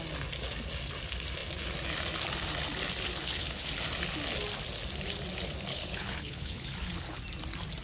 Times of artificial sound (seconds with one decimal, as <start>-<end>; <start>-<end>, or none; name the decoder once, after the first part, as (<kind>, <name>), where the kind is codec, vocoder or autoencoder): 3.1-3.7 (codec, HILCodec); 5.7-7.2